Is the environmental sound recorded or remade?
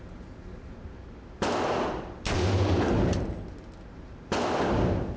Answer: recorded